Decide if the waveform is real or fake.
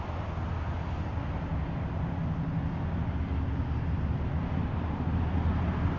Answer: real